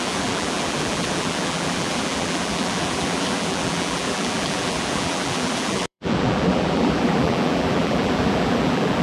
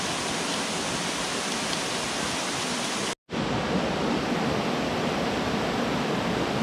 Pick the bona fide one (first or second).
second